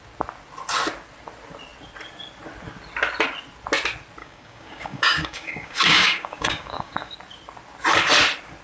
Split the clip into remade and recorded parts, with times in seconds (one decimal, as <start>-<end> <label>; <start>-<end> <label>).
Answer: 0.0-4.2 recorded; 4.2-7.1 remade; 7.1-8.6 recorded